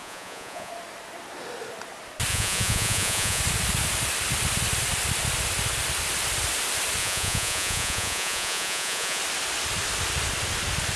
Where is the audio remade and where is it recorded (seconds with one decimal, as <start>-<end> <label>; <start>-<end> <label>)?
0.0-0.7 remade; 0.7-2.3 recorded; 2.3-3.4 remade; 3.4-7.0 recorded; 7.0-9.2 remade; 9.2-11.0 recorded